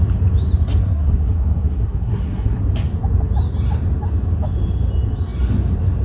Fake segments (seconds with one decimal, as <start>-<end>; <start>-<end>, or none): 0.8-2.6